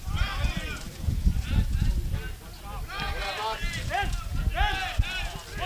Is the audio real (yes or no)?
yes